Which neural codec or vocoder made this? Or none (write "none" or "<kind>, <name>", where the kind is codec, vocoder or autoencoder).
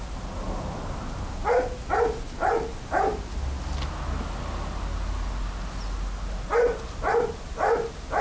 none